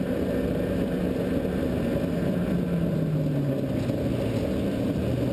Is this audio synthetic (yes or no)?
no